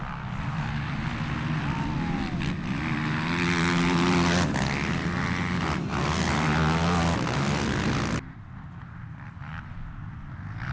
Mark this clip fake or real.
real